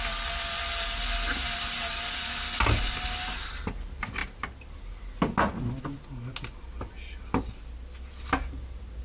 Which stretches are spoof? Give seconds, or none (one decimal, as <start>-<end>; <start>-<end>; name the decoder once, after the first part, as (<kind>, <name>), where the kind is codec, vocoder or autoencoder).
none